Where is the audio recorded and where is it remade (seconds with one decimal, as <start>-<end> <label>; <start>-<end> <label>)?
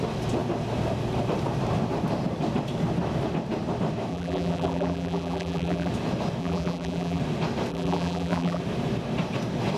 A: 0.0-4.1 recorded; 4.1-5.9 remade; 5.9-6.4 recorded; 6.4-7.2 remade; 7.2-7.7 recorded; 7.7-8.6 remade; 8.6-9.8 recorded